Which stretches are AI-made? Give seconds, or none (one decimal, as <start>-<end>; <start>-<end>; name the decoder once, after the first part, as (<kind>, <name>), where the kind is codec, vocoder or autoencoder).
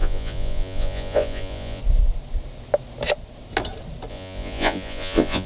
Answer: 0.0-1.8 (vocoder, Vocos); 4.1-5.5